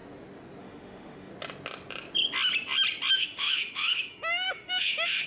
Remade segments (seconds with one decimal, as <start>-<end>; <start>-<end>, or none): 0.6-1.3; 3.1-5.3